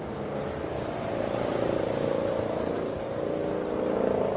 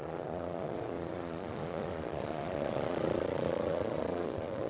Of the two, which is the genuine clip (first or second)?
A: first